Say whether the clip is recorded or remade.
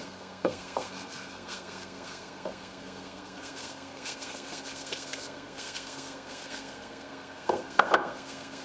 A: remade